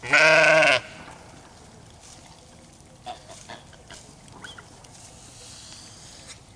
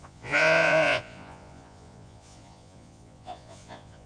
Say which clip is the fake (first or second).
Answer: second